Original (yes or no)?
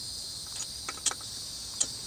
yes